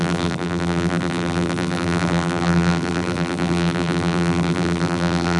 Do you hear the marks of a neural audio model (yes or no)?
yes